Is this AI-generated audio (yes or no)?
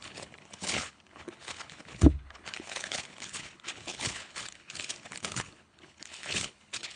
yes